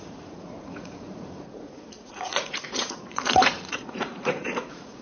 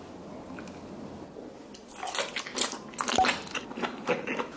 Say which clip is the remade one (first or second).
first